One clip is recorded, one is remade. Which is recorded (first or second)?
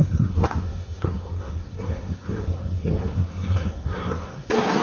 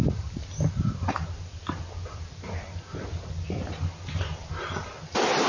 second